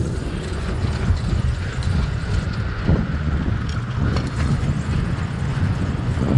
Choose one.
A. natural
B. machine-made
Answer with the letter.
B